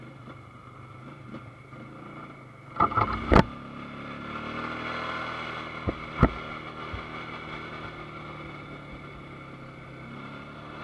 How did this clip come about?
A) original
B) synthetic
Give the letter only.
A